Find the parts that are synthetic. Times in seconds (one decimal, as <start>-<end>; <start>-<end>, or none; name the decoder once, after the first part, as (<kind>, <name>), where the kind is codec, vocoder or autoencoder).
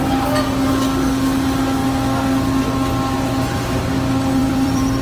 4.4-5.0 (vocoder, BigVGAN v2)